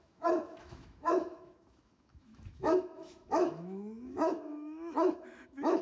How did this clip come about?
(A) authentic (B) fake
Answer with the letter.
B